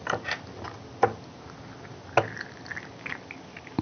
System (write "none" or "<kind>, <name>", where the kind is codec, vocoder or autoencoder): none